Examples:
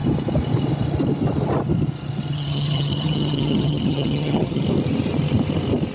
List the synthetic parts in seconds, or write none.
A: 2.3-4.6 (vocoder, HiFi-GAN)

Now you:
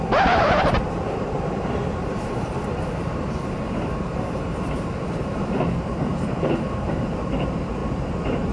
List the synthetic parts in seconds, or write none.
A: 0.0-8.5 (vocoder, BigVGAN v2)

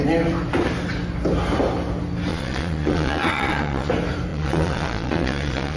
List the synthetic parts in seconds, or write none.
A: 2.3-3.9 (vocoder, Vocos); 4.3-5.8